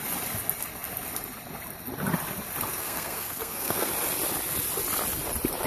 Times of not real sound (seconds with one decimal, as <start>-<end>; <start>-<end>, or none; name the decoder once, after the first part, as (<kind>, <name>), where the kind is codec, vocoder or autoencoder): 2.7-3.9 (codec, SNAC)